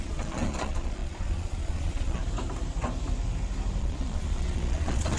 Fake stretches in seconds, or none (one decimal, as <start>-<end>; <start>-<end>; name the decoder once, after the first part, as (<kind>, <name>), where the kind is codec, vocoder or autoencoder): 0.0-2.2 (vocoder, Vocos); 3.8-5.2

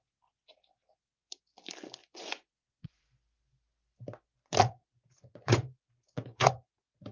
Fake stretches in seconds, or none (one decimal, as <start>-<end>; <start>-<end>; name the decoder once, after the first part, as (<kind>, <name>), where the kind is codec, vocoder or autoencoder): 2.0-3.1 (vocoder, Vocos); 4.8-6.5